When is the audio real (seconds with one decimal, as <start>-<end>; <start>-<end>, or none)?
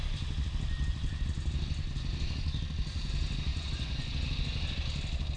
0.0-3.5; 4.1-5.4